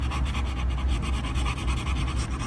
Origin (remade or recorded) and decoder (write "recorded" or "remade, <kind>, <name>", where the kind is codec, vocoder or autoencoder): recorded